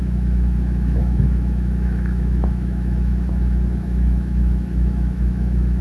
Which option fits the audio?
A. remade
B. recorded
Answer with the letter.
A